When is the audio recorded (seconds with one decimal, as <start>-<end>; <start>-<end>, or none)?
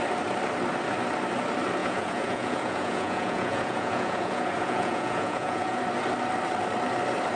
0.0-1.8; 5.8-7.4